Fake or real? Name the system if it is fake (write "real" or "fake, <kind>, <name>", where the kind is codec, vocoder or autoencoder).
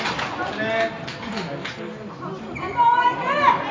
real